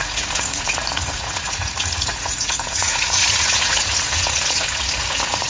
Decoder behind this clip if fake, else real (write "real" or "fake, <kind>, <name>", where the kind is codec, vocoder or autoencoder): fake, vocoder, Vocos